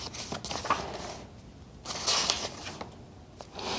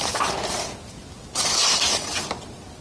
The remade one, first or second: second